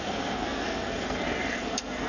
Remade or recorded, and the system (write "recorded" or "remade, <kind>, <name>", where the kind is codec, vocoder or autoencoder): remade, codec, SNAC